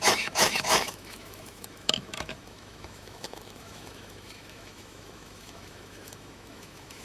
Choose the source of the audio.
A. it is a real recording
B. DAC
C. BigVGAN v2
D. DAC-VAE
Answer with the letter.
D